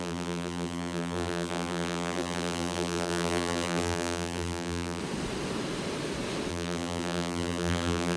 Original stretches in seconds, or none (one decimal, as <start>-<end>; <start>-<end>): 5.0-6.5